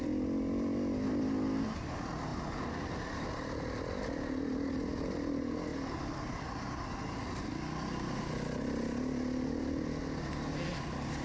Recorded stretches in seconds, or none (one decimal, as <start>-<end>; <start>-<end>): 0.0-11.2